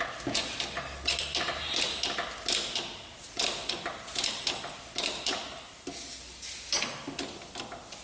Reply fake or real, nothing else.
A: real